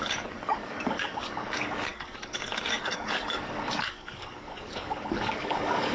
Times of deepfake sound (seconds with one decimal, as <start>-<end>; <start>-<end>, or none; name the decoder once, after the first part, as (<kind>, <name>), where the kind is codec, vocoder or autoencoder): 0.0-5.9 (codec, DAC)